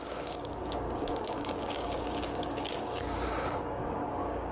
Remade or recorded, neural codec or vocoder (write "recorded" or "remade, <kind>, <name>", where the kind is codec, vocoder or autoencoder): remade, codec, DAC